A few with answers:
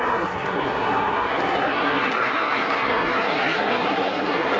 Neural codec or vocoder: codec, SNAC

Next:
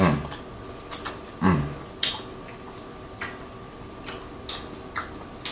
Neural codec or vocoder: none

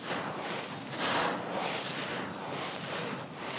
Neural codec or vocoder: none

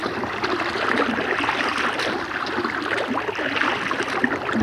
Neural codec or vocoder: none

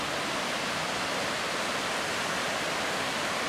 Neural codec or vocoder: none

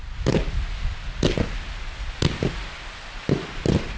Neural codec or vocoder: none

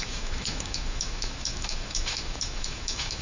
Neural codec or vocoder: autoencoder, DAC-VAE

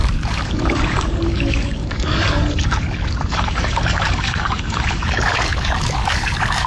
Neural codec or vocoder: codec, DAC